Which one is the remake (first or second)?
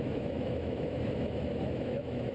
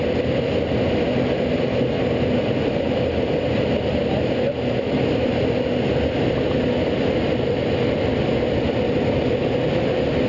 first